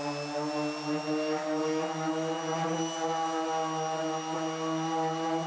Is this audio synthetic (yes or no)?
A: no